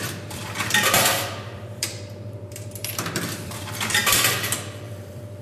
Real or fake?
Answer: fake